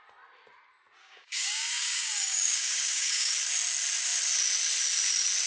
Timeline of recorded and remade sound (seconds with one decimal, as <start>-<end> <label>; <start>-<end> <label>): 0.0-1.0 recorded; 1.0-3.3 remade; 3.3-5.5 recorded